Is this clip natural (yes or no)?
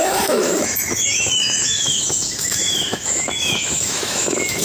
no